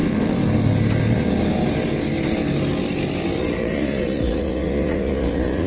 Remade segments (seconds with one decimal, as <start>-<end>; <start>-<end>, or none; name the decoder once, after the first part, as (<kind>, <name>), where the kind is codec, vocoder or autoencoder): 3.4-5.7 (vocoder, Vocos)